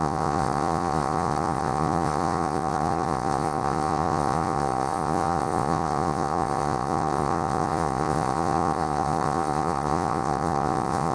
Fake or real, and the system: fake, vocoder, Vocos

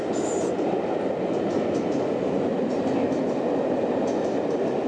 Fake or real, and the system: real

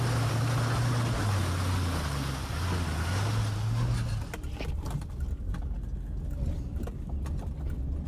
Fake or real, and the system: real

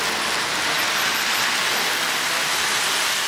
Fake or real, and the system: real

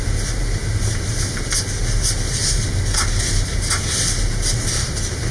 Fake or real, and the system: real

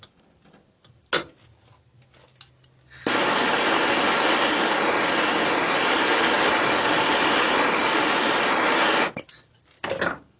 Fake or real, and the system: real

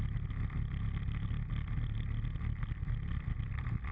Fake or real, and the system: real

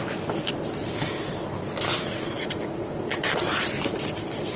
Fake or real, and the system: real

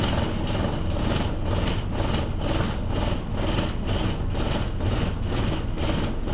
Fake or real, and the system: real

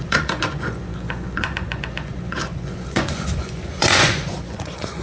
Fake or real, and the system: fake, vocoder, Vocos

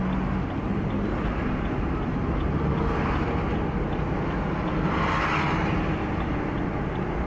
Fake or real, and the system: real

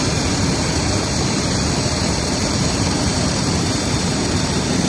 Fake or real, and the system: fake, vocoder, BigVGAN v2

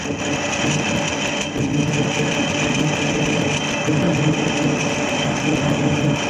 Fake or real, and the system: real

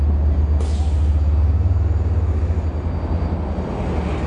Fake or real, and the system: real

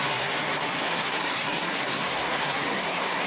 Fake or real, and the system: fake, codec, SNAC